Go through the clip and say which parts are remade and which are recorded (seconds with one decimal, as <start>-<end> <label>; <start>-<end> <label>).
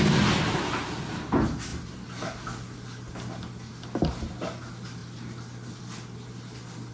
0.0-6.9 recorded